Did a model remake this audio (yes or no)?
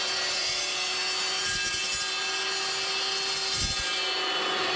no